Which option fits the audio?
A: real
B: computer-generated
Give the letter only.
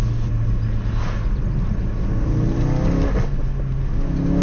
A